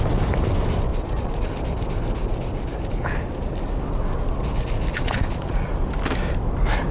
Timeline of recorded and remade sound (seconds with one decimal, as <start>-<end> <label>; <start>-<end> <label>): 0.0-0.9 recorded; 0.9-1.5 remade; 1.5-4.9 recorded; 4.9-5.7 remade; 5.7-6.9 recorded